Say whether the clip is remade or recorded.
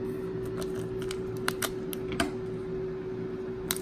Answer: recorded